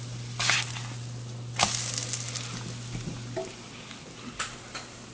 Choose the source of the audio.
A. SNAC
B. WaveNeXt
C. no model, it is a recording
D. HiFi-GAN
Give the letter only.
C